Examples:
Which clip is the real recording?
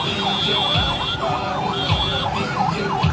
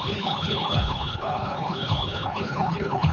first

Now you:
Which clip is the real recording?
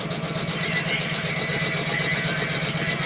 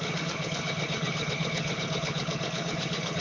first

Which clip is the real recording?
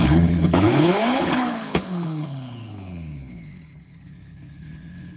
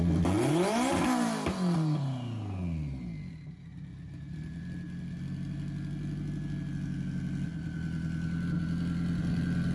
second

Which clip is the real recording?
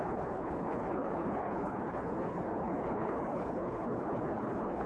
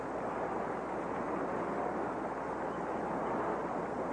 second